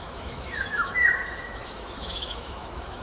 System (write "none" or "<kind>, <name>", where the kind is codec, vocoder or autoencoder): autoencoder, DAC-VAE